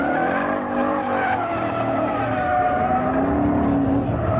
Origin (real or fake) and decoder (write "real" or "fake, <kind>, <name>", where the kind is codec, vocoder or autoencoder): real